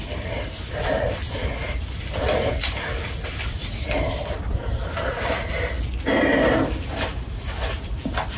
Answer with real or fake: real